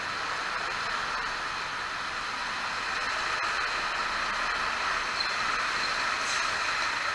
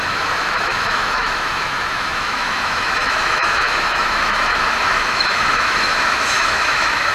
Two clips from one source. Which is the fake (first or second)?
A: second